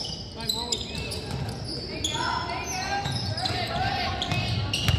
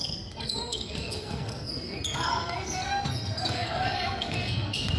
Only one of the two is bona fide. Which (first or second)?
first